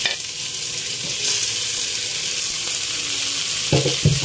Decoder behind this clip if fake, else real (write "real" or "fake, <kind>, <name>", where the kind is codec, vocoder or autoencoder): real